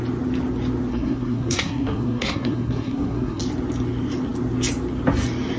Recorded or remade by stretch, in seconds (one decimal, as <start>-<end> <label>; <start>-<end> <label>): 0.0-0.9 recorded; 0.9-3.4 remade; 3.4-5.6 recorded